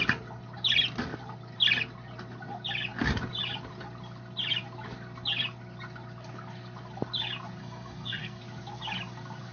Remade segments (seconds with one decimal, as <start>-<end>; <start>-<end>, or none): 7.6-8.4